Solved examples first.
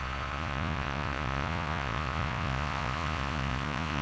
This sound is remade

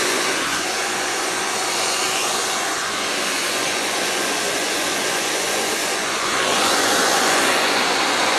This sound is remade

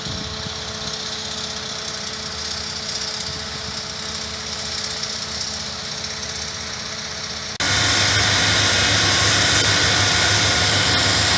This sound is recorded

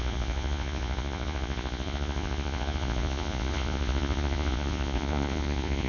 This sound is remade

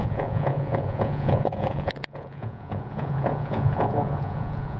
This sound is remade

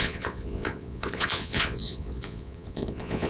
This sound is remade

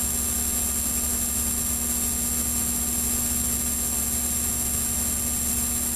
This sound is recorded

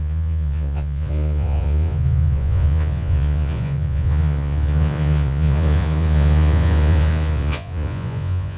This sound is remade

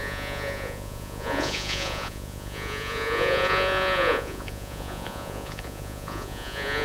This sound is remade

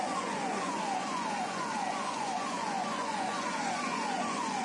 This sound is remade